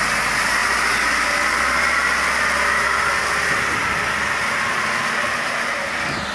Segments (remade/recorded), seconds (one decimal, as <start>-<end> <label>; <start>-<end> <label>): 0.0-6.3 recorded